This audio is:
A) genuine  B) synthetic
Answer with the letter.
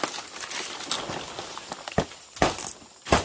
A